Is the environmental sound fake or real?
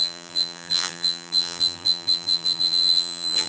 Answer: fake